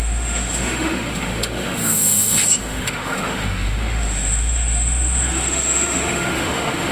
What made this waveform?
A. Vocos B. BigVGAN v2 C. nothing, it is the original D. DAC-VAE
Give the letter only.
D